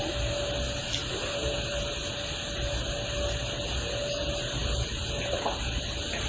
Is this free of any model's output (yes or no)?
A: yes